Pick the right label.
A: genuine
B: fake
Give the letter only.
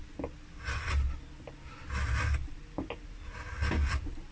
A